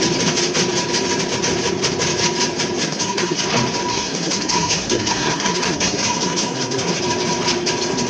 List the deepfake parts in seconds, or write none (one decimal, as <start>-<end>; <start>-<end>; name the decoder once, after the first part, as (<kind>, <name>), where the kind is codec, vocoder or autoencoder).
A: 2.8-3.4 (codec, SNAC); 3.9-7.0